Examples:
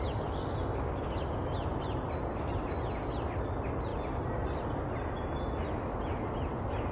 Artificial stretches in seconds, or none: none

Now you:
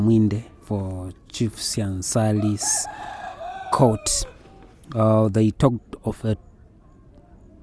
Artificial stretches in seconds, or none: none

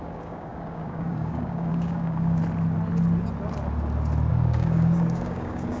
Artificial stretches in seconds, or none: 0.0-2.4 (codec, DAC); 4.3-5.8

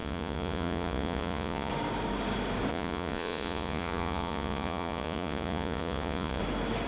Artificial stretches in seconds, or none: 0.0-1.7 (vocoder, Vocos); 2.7-6.4

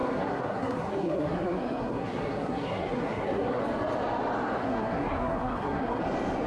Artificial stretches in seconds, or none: 0.0-3.6 (codec, SNAC); 4.6-6.0

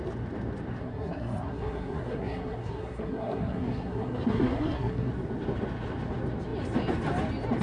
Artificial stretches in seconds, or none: 0.8-5.1 (codec, SNAC)